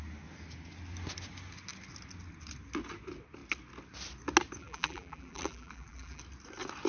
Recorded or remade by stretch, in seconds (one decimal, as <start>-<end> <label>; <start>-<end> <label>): 0.0-4.6 recorded; 4.6-6.2 remade; 6.2-6.9 recorded

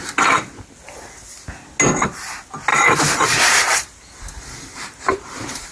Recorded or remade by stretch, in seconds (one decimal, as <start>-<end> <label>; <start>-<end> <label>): 0.0-2.7 recorded; 2.7-5.7 remade

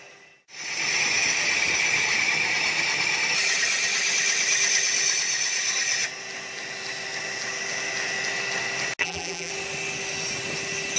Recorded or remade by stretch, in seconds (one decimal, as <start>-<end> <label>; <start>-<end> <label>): 0.0-9.0 recorded; 9.0-9.5 remade; 9.5-11.0 recorded

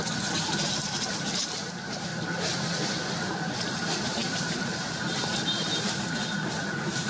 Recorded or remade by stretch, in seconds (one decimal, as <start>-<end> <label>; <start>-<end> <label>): 0.0-2.1 remade; 2.1-3.3 recorded; 3.3-7.1 remade